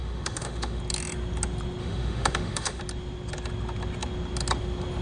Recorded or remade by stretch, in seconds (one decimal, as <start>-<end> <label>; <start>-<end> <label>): 0.0-0.8 remade; 0.8-1.8 recorded; 1.8-2.8 remade; 2.8-5.0 recorded